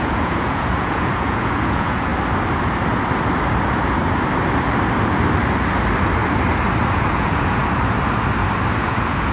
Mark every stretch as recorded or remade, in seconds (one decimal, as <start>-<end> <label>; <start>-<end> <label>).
0.0-2.1 remade; 2.1-6.9 recorded; 6.9-7.6 remade; 7.6-8.8 recorded; 8.8-9.3 remade